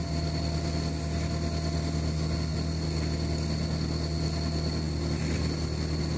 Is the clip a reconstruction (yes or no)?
no